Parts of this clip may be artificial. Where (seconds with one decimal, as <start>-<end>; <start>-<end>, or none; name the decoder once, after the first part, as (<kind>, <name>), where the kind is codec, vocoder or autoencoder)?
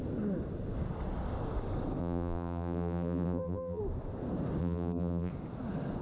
2.0-3.8 (vocoder, BigVGAN v2); 4.6-5.3